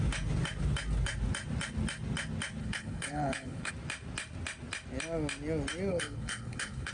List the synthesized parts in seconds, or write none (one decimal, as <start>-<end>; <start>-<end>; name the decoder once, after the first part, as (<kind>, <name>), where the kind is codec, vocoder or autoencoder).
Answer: 2.6-3.7 (codec, HILCodec); 5.9-6.9